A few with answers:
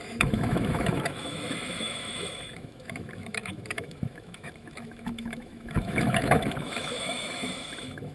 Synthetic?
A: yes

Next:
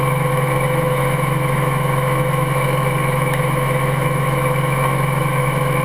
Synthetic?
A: yes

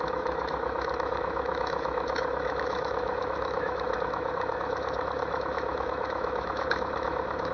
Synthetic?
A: yes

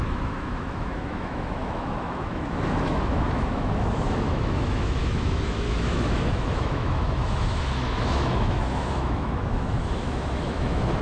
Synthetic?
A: yes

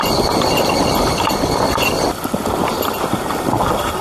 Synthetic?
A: no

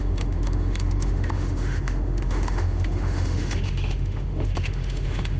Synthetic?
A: yes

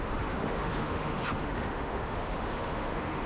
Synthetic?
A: yes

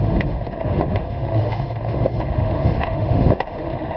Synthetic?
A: yes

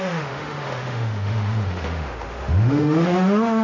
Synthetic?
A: yes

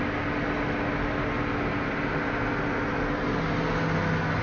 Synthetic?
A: no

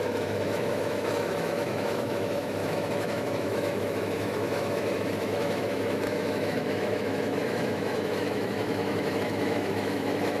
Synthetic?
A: yes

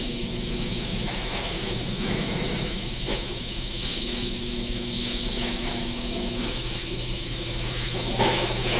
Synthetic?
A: yes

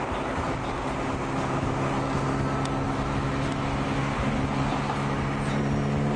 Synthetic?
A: no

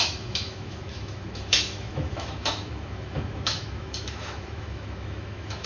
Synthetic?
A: yes